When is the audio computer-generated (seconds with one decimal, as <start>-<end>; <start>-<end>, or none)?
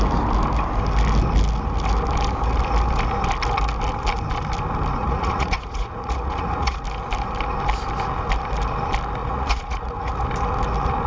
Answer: 5.0-6.8; 9.2-10.1